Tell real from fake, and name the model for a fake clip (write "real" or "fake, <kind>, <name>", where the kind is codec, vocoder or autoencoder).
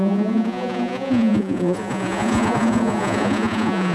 fake, vocoder, Vocos